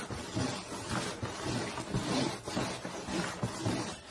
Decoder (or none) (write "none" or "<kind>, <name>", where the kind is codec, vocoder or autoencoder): none